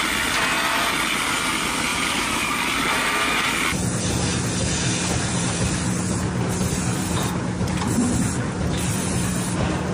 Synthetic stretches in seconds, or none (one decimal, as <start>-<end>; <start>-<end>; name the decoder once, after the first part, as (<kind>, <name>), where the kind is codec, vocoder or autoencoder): 1.9-3.0 (vocoder, BigVGAN v2); 4.6-9.3